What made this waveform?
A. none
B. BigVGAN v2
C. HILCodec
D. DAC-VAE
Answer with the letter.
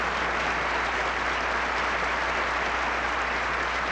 A